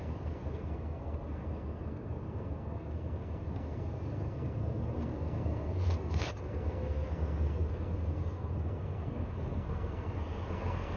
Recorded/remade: remade